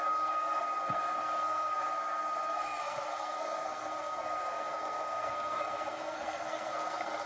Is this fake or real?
fake